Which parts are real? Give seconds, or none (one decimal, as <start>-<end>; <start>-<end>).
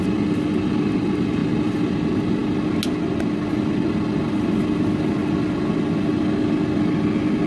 0.0-7.5